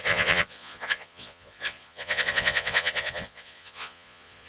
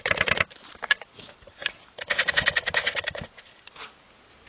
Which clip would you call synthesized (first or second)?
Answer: first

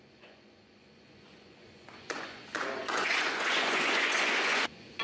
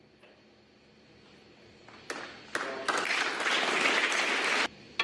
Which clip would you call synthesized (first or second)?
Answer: first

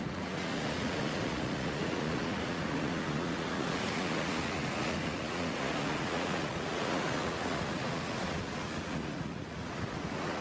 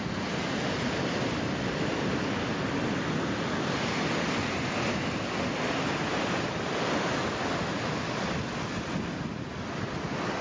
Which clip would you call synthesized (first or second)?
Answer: first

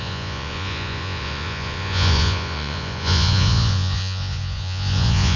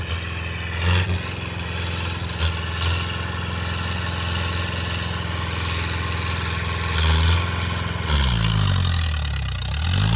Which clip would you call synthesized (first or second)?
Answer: first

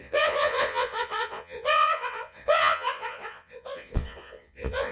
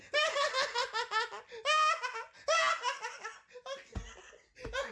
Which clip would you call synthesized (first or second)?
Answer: first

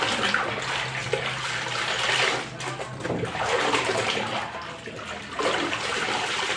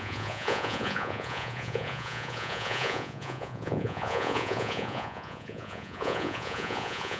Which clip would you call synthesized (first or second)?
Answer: second